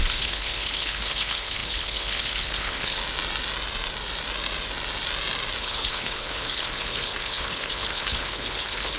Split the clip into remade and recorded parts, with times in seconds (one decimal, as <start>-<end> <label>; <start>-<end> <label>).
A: 0.0-3.0 remade; 3.0-5.6 recorded; 5.6-9.0 remade